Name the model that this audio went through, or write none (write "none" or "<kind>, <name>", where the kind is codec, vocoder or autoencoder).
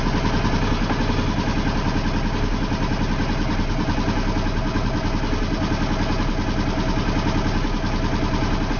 none